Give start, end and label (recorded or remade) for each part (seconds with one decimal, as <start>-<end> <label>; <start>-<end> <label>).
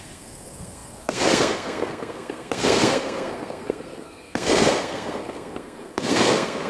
0.0-6.7 remade